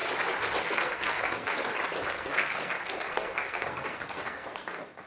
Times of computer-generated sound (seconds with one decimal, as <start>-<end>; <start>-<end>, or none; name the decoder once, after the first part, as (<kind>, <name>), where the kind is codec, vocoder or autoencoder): 0.6-1.6 (codec, SNAC); 2.1-5.1

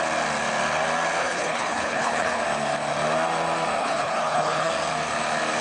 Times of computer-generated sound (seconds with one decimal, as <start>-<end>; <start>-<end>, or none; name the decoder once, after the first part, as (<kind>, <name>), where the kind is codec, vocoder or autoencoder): 1.2-2.4 (codec, HILCodec); 3.8-4.7

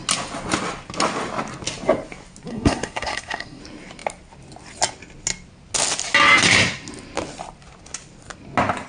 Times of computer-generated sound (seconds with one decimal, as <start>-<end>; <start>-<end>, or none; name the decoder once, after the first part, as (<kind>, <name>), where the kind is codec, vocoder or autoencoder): 2.5-3.6 (codec, SNAC)

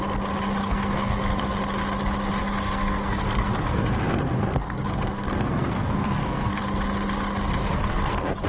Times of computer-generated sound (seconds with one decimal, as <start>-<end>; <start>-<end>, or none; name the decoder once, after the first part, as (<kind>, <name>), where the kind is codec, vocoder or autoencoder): 0.6-1.6 (codec, SNAC); 2.4-6.6; 7.6-8.5

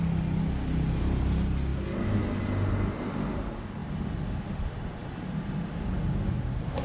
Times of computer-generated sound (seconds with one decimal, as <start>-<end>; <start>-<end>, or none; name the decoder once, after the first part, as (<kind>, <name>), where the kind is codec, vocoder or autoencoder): none

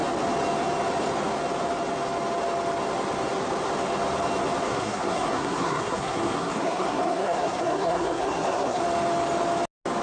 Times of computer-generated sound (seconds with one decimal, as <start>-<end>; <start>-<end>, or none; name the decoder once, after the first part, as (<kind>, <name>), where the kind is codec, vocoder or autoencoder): 4.7-8.8 (codec, SNAC)